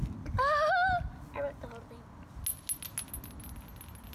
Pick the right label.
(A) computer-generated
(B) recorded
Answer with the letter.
B